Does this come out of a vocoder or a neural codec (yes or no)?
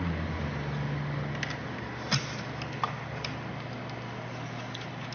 no